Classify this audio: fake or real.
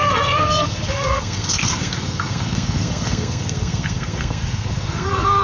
fake